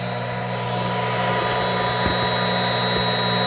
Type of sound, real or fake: real